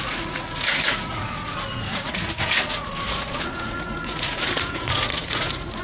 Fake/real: fake